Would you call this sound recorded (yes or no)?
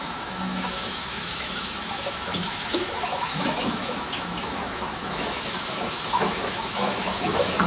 no